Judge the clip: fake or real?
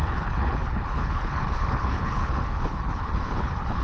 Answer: fake